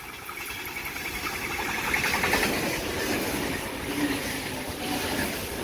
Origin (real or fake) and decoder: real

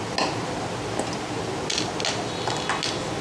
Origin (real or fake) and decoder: real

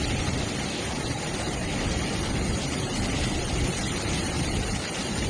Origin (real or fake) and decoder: fake, vocoder, BigVGAN v2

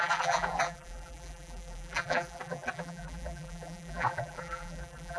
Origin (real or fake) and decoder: fake, vocoder, BigVGAN v2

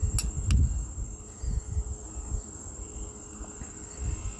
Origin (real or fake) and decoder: real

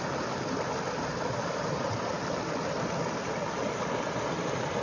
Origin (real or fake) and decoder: real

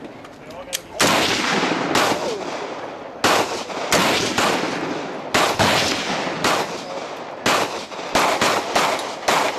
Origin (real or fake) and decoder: real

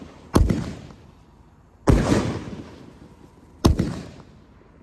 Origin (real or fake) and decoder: real